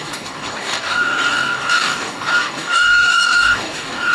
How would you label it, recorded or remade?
remade